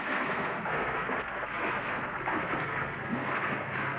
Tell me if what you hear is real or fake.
fake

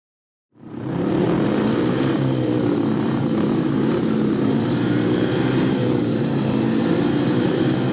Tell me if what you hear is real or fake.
fake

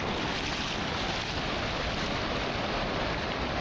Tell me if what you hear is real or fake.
real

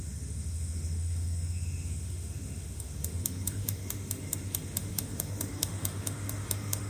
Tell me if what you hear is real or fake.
fake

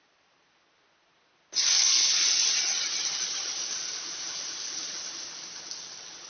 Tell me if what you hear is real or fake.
real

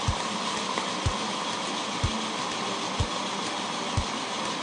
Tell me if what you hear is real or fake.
real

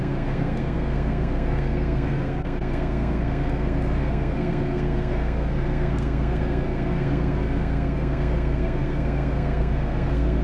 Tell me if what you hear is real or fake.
fake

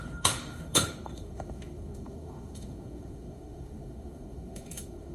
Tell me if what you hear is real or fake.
fake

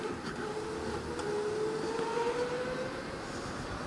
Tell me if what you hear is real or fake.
real